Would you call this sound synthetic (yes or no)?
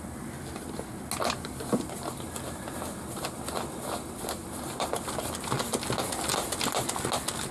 no